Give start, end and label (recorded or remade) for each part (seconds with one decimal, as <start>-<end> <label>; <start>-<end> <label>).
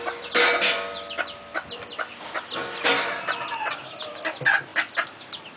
0.0-5.6 recorded